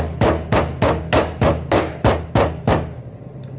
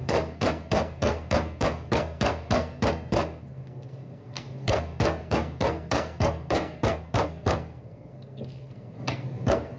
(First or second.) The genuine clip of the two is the first